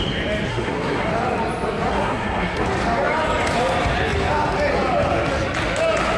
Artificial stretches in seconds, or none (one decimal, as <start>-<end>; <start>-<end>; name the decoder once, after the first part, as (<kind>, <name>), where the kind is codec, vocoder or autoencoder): 0.5-1.1 (codec, SNAC); 1.9-2.6